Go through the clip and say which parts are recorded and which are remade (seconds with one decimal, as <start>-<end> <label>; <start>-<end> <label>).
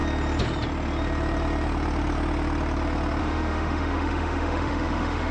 0.0-3.2 recorded; 3.2-5.3 remade